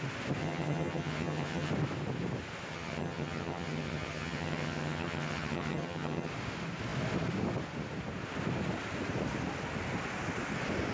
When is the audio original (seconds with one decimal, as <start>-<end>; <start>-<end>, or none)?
0.0-0.4; 1.7-2.7; 6.3-10.9